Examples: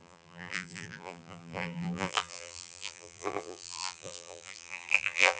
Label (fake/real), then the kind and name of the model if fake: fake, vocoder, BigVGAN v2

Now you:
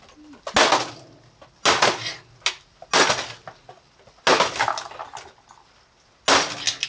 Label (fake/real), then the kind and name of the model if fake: real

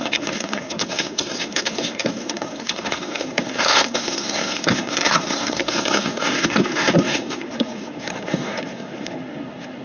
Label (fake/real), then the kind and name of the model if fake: fake, codec, SNAC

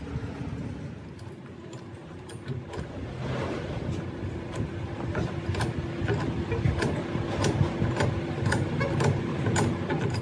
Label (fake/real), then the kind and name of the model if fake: real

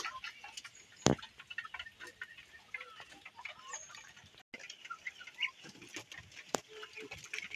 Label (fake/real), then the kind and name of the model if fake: real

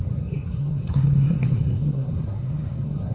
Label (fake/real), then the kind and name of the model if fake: fake, codec, SNAC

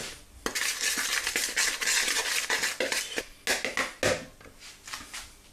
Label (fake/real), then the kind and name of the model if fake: real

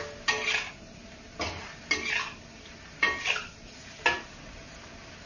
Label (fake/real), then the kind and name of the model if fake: real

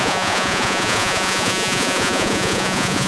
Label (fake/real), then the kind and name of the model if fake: fake, vocoder, Vocos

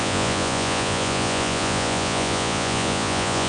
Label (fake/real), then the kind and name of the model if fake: fake, vocoder, Vocos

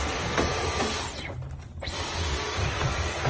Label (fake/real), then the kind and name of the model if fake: real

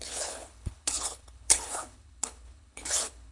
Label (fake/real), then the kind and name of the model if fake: fake, codec, HILCodec